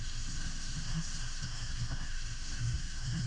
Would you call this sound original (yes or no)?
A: no